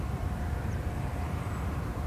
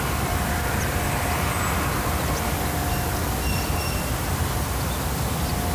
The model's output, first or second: first